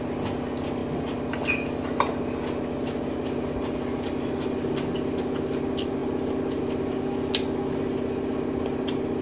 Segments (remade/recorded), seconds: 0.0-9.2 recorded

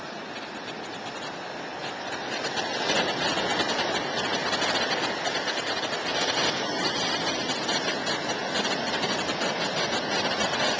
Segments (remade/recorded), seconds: 0.0-10.8 recorded